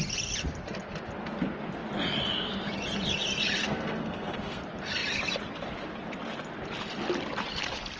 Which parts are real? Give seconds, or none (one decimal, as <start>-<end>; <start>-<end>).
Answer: 0.0-3.6; 4.6-8.0